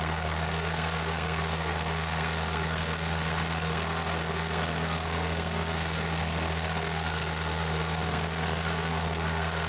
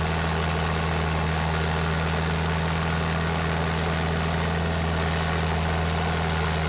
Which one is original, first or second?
second